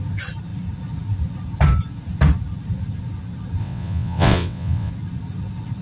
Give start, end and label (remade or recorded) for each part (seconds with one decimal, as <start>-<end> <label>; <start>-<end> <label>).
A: 0.0-3.6 recorded; 3.6-4.9 remade; 4.9-5.8 recorded